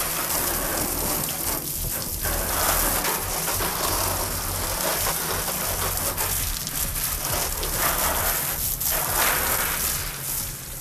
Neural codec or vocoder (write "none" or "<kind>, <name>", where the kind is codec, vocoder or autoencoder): none